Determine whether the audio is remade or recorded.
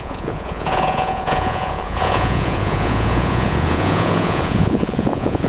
remade